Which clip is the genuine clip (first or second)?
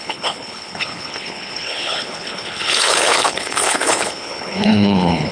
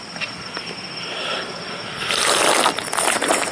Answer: second